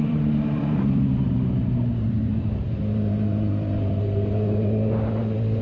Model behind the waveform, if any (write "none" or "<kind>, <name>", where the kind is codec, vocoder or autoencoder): vocoder, BigVGAN v2